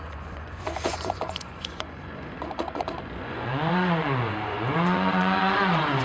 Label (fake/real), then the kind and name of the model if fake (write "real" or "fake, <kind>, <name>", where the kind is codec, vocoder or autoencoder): fake, vocoder, Vocos